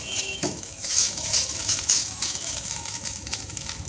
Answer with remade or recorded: remade